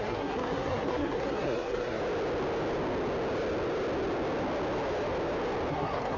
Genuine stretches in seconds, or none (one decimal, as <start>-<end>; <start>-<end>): 2.0-5.7